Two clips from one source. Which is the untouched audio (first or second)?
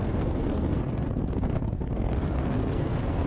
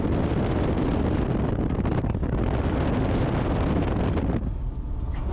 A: second